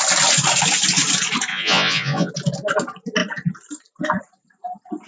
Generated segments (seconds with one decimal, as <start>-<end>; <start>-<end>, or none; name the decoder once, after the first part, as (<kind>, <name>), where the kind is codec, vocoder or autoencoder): 1.5-2.3 (vocoder, Vocos)